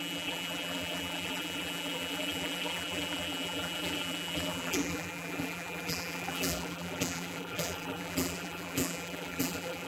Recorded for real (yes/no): no